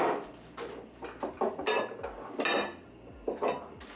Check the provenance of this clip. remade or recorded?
recorded